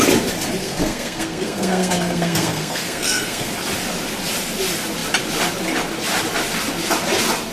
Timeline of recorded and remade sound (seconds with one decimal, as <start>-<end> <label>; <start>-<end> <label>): 0.0-0.6 recorded; 0.6-3.5 remade; 3.5-7.5 recorded